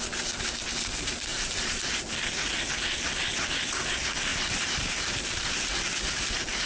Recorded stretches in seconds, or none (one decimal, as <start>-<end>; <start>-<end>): 0.0-1.3; 1.9-4.3